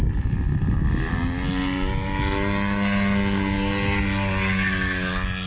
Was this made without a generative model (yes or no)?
yes